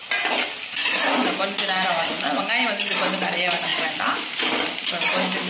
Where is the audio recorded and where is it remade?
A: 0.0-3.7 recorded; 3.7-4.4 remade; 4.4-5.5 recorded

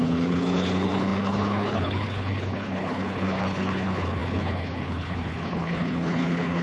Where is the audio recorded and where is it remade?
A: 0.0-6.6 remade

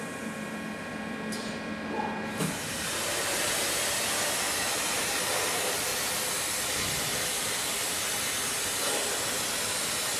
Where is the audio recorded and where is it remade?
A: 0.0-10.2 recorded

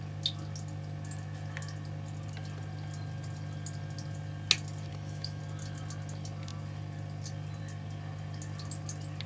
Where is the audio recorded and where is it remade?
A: 0.0-4.9 recorded; 4.9-5.4 remade; 5.4-9.3 recorded